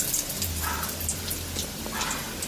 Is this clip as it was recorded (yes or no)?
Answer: yes